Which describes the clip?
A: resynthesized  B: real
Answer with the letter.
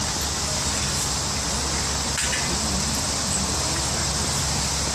B